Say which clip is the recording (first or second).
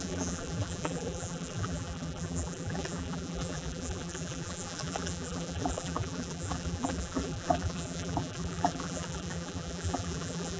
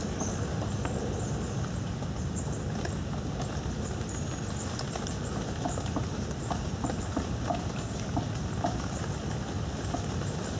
second